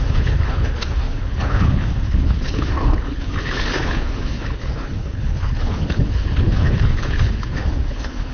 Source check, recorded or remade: remade